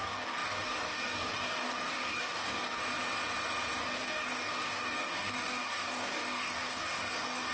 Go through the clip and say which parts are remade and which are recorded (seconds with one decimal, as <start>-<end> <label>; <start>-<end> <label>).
0.0-2.8 remade; 2.8-3.8 recorded; 3.8-7.5 remade